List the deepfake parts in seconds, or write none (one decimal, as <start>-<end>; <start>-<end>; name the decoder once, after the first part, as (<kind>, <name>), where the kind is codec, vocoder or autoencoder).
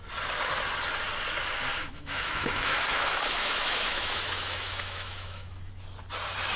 1.7-5.7 (autoencoder, DAC-VAE)